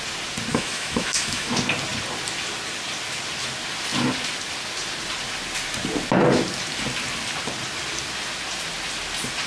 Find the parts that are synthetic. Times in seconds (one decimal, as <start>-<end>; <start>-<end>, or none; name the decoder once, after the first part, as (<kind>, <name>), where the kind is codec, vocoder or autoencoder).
0.5-1.5 (autoencoder, DAC-VAE)